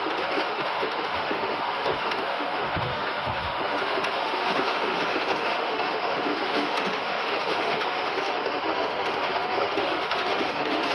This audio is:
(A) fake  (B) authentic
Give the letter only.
A